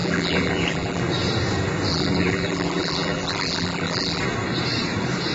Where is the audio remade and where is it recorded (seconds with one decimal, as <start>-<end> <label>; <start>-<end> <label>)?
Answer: 0.0-1.0 remade; 1.0-1.9 recorded; 1.9-4.2 remade; 4.2-5.3 recorded